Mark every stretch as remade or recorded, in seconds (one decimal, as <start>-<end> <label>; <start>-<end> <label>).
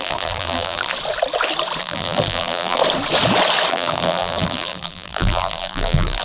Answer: 0.0-0.9 remade; 0.9-1.8 recorded; 1.8-2.8 remade; 2.8-3.7 recorded; 3.7-6.2 remade